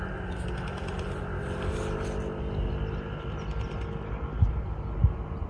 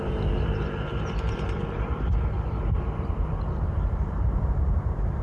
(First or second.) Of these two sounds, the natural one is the first